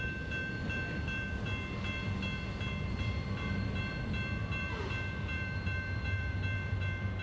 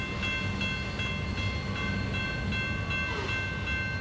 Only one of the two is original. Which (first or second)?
second